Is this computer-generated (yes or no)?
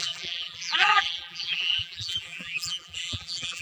yes